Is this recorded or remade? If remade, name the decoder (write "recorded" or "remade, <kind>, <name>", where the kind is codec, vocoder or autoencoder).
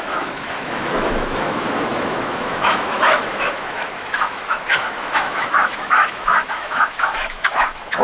remade, autoencoder, DAC-VAE